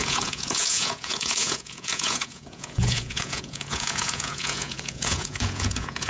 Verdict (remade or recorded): remade